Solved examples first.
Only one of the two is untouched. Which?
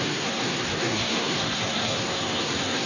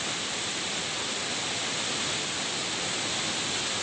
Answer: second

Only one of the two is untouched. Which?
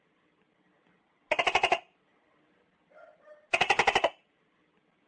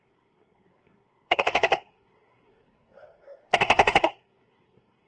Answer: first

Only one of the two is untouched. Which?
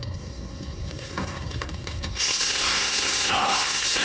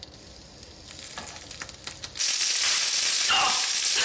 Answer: second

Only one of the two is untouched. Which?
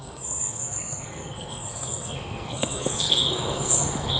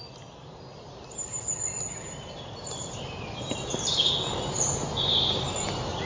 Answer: second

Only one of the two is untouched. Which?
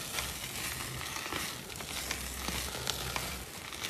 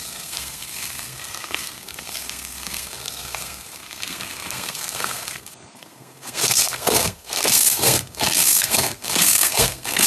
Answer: first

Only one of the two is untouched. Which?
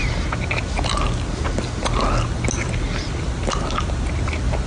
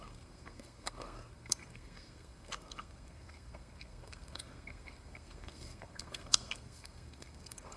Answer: first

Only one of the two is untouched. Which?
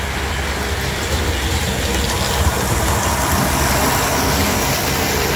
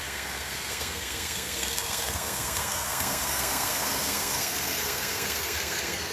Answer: first